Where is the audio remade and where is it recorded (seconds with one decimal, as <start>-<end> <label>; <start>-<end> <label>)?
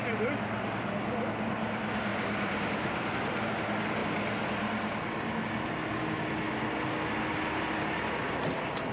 0.0-0.9 remade; 0.9-2.1 recorded; 2.1-3.1 remade; 3.1-8.9 recorded